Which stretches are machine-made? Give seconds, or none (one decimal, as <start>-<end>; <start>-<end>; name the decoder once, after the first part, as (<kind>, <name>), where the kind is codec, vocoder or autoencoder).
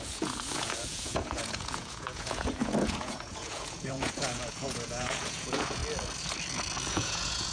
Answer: 0.0-5.8 (vocoder, Vocos); 6.9-7.5